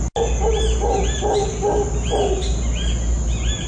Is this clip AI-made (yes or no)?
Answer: no